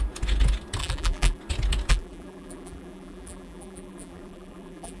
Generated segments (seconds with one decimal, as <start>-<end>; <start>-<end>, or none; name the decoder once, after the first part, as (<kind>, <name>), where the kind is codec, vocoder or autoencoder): 0.8-1.4 (vocoder, BigVGAN v2); 1.9-5.0